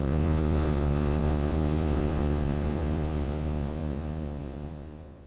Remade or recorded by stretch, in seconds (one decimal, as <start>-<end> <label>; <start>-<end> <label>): 0.0-5.3 remade